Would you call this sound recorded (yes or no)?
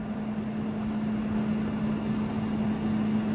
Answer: yes